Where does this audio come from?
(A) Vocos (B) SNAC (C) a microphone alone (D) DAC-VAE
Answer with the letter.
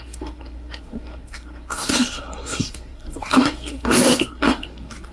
B